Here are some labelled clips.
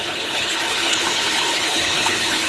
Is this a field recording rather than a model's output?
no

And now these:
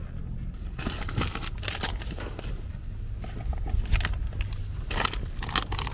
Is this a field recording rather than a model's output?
yes